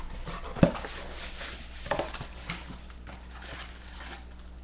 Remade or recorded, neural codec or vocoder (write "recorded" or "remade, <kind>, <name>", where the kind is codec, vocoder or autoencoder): recorded